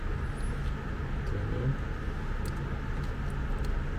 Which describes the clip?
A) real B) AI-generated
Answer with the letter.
A